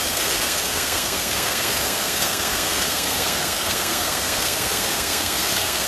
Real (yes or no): no